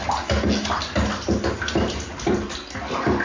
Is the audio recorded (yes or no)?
yes